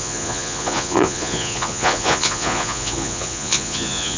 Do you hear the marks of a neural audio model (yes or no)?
yes